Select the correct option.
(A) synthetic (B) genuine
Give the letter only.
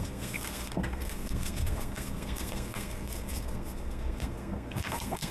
A